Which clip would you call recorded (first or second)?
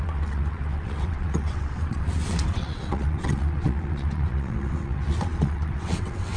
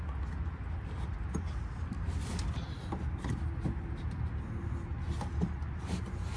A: second